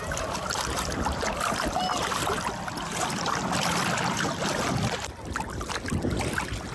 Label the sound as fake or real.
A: real